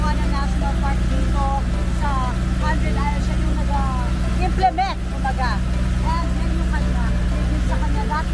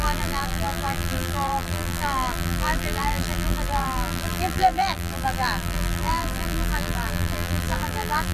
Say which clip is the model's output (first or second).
second